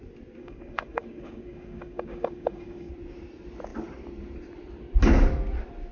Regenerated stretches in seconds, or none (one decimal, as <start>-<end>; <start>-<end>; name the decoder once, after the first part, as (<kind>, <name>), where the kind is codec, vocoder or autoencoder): 0.4-2.9 (codec, DAC)